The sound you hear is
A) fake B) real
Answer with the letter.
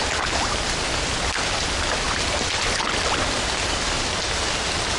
B